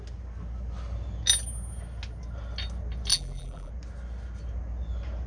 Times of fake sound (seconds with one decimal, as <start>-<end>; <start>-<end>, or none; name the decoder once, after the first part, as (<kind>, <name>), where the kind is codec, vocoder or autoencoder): 3.1-3.7 (vocoder, BigVGAN v2)